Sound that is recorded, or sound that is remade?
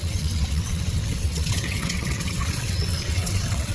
remade